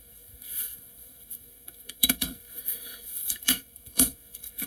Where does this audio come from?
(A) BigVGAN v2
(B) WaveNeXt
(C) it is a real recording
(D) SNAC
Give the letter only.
D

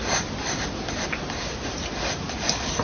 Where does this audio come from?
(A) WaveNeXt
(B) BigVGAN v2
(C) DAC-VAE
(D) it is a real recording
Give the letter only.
D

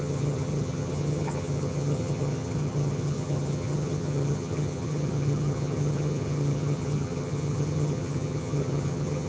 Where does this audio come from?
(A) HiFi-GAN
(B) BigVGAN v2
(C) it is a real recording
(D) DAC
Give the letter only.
A